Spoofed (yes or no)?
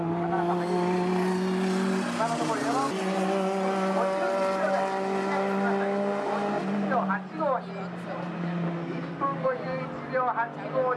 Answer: no